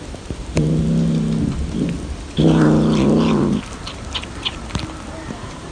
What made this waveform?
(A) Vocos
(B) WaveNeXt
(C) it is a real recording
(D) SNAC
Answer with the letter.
C